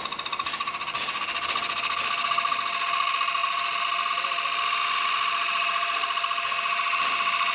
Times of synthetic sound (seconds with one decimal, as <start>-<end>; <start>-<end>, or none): none